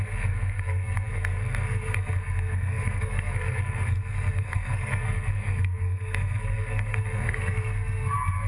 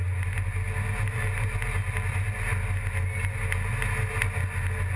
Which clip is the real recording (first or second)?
second